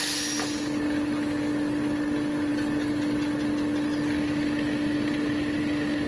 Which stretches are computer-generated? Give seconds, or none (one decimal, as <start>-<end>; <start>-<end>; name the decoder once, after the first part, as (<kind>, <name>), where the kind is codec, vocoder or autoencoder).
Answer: none